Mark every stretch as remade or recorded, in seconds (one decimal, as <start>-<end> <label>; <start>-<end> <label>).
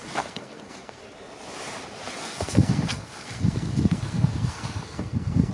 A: 0.0-1.0 remade; 1.0-2.2 recorded; 2.2-5.5 remade